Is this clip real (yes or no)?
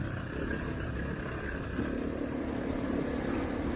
yes